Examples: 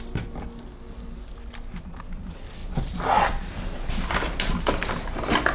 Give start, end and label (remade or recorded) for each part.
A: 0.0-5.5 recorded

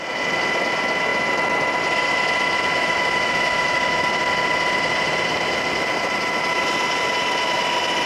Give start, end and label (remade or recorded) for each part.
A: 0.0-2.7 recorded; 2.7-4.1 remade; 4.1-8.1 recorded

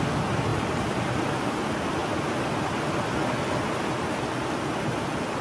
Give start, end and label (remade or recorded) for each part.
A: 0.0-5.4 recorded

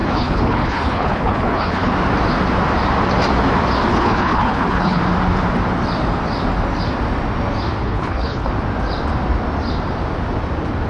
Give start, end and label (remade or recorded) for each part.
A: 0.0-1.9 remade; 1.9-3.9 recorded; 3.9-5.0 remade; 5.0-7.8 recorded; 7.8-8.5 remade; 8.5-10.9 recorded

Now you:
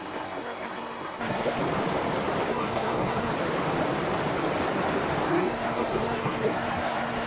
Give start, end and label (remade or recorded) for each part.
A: 0.0-1.6 remade; 1.6-2.5 recorded; 2.5-3.3 remade; 3.3-5.3 recorded; 5.3-7.3 remade

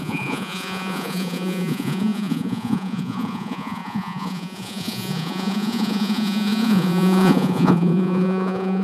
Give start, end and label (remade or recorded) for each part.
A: 0.0-8.8 remade

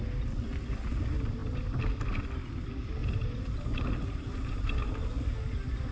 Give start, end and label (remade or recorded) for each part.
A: 0.0-3.0 recorded; 3.0-5.1 remade; 5.1-5.9 recorded

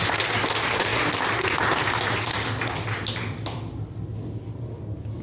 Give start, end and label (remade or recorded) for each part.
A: 0.0-5.2 recorded